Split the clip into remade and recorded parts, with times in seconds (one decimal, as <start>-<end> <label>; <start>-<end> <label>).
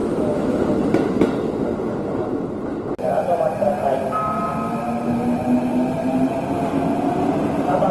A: 0.0-0.6 remade; 0.6-7.9 recorded